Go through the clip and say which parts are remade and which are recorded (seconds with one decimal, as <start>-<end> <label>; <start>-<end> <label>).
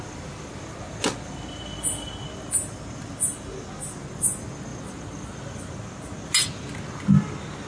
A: 0.0-7.7 recorded